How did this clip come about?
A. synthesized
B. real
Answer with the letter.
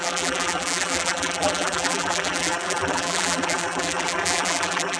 A